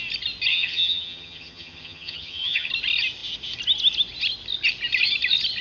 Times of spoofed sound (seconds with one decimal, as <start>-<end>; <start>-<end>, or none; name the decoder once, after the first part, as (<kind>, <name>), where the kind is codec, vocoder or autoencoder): 0.5-2.7 (vocoder, HiFi-GAN)